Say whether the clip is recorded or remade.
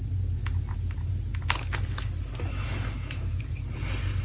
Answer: recorded